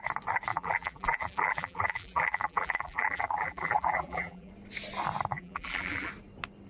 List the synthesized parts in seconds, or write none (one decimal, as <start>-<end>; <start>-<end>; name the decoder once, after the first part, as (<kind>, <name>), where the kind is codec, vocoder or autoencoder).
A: 0.5-4.5 (vocoder, BigVGAN v2); 5.3-6.1